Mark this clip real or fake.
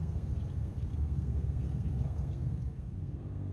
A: fake